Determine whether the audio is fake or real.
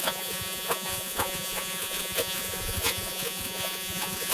fake